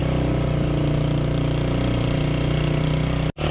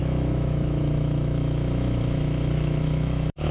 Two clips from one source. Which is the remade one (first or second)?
second